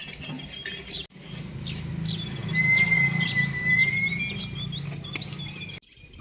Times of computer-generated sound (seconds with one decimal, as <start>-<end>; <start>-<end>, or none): none